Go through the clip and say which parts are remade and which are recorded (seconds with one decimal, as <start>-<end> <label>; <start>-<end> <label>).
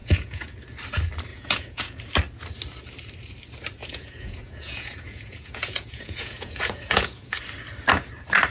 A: 0.0-0.5 remade; 0.5-1.3 recorded; 1.3-2.0 remade; 2.0-3.8 recorded; 3.8-7.4 remade; 7.4-8.5 recorded